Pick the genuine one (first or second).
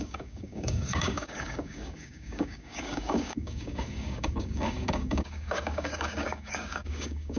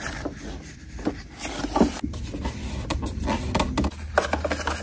second